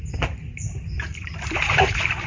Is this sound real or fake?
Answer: real